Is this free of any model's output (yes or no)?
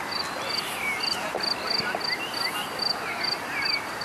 yes